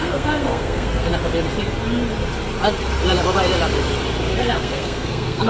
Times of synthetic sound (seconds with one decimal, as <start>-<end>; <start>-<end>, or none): 0.0-1.1; 4.4-5.5

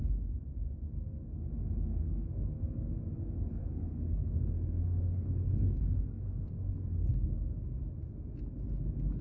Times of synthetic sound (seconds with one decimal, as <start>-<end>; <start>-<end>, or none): 1.9-2.6; 3.5-7.8

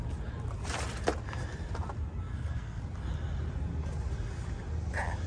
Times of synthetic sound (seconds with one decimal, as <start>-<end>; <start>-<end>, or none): 2.3-2.8